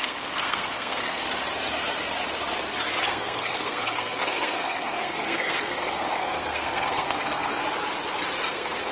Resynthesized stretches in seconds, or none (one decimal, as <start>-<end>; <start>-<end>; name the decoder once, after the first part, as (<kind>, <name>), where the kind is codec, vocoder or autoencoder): 0.0-1.2 (codec, SNAC); 3.0-7.6; 8.5-8.9